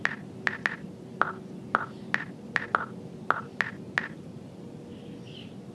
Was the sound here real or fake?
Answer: real